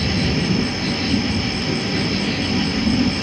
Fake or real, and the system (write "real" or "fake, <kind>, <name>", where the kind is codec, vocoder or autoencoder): real